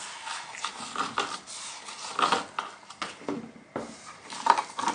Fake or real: real